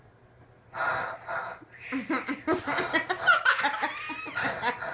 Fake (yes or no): no